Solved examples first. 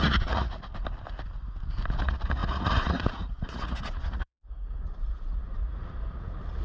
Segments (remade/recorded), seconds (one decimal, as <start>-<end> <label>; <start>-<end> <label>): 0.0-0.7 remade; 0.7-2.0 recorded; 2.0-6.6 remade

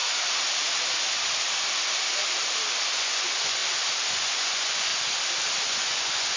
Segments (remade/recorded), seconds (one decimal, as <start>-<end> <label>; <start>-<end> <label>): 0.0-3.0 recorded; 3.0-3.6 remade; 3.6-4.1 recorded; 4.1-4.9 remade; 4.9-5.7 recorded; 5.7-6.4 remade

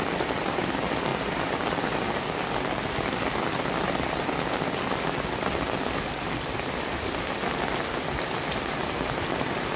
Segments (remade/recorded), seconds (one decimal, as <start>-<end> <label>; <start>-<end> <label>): 0.0-9.8 recorded

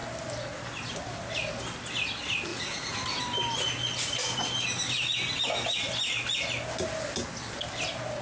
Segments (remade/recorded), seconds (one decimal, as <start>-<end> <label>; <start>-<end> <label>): 0.0-2.5 recorded; 2.5-3.2 remade; 3.2-8.2 recorded